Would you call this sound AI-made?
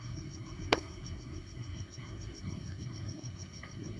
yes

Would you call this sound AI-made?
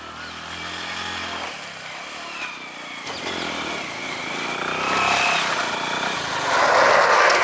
no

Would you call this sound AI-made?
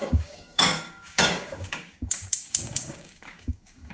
yes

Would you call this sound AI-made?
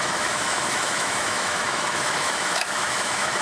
yes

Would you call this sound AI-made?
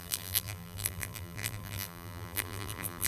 yes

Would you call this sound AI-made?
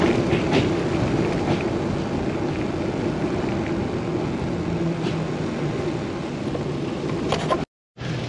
no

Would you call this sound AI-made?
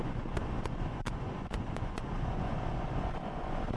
yes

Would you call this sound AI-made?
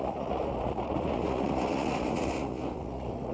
yes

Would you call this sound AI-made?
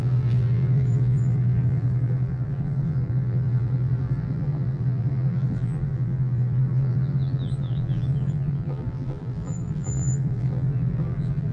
yes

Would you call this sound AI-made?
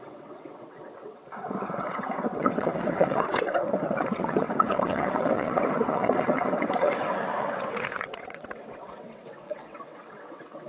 yes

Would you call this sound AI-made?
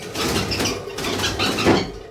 no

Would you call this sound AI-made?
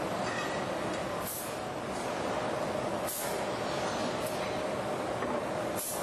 no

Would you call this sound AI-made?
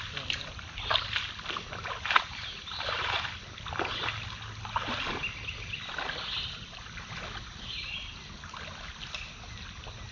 no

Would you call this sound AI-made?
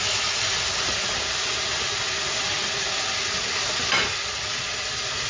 no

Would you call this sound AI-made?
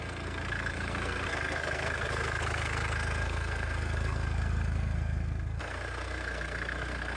yes